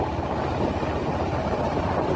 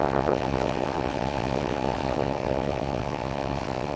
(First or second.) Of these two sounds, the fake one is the second